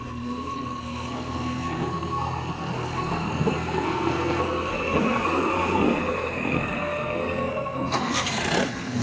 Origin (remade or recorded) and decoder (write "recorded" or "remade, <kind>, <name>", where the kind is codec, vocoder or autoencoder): remade, codec, SNAC